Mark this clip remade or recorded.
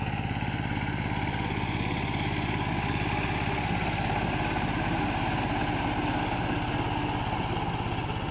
recorded